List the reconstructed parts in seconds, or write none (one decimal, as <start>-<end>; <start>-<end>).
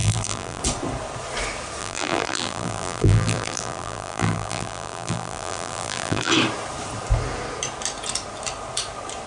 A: 0.0-0.6; 1.8-6.3